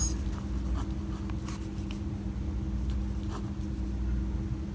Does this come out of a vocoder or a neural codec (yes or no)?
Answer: no